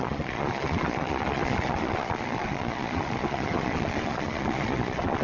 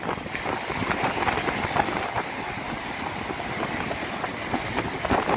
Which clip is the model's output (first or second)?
first